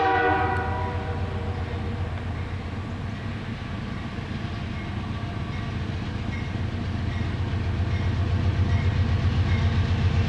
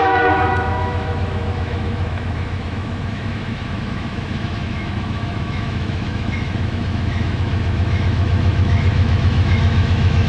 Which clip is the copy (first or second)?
second